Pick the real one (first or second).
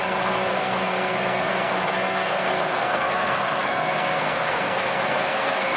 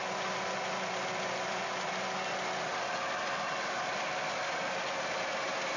second